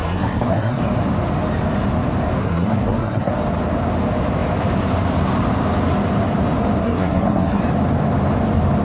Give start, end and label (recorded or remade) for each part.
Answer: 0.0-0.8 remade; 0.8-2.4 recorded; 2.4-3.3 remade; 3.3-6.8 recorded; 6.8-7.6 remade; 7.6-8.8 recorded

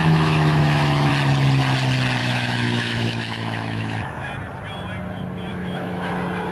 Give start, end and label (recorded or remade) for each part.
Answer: 0.0-1.1 remade; 1.1-2.2 recorded; 2.2-4.3 remade; 4.3-5.5 recorded; 5.5-6.1 remade; 6.1-6.5 recorded

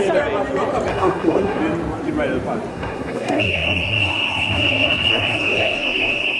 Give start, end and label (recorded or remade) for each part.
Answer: 0.0-0.9 recorded; 0.9-1.6 remade; 1.6-2.7 recorded; 2.7-6.4 remade

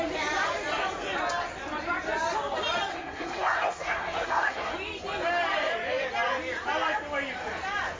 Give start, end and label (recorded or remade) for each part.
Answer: 0.0-2.9 recorded; 2.9-4.7 remade; 4.7-8.0 recorded

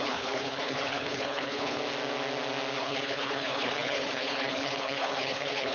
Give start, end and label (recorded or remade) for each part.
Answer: 0.0-1.8 remade; 1.8-2.8 recorded; 2.8-5.7 remade

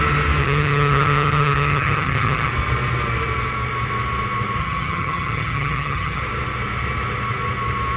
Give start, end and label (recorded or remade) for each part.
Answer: 0.0-0.4 recorded; 0.4-2.5 remade; 2.5-4.6 recorded; 4.6-6.2 remade; 6.2-8.0 recorded

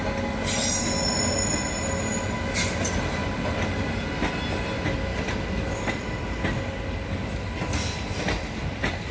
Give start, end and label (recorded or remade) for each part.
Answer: 0.0-9.1 recorded

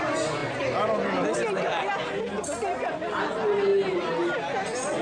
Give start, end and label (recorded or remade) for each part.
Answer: 0.0-5.0 recorded